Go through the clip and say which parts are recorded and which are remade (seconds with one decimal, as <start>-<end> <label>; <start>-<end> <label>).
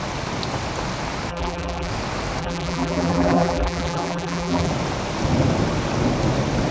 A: 0.0-1.3 recorded; 1.3-1.9 remade; 1.9-2.4 recorded; 2.4-4.7 remade; 4.7-6.7 recorded